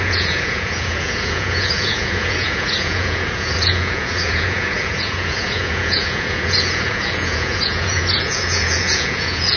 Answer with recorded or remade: remade